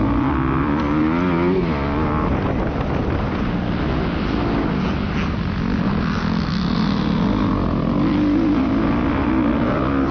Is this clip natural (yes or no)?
yes